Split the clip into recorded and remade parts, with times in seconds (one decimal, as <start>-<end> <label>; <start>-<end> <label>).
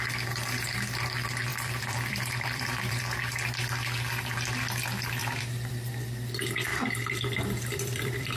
0.0-1.5 recorded; 1.5-3.0 remade; 3.0-5.2 recorded; 5.2-5.7 remade; 5.7-6.7 recorded; 6.7-8.4 remade